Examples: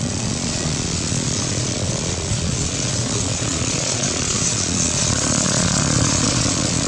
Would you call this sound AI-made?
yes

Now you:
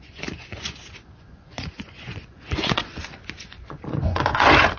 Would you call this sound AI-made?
yes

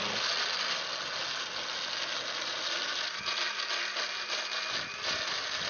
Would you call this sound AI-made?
no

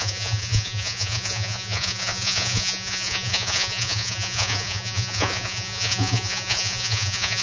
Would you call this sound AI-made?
yes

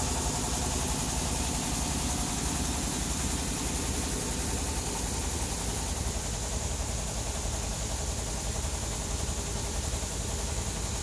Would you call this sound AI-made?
no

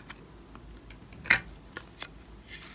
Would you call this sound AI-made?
no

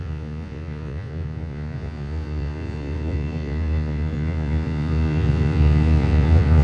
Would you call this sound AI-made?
yes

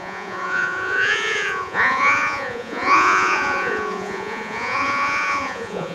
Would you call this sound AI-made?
yes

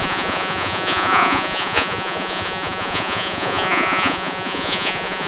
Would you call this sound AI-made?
yes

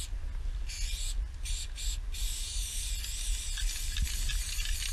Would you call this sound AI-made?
no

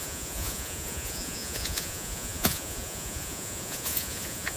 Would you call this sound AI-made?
yes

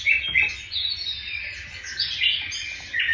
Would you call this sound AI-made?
no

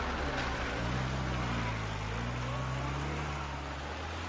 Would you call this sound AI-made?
no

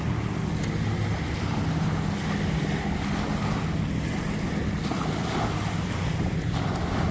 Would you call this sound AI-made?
no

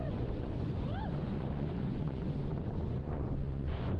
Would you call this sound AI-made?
yes